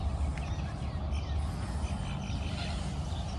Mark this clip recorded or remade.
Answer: recorded